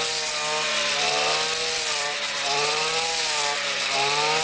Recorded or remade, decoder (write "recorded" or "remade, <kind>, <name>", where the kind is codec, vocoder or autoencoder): recorded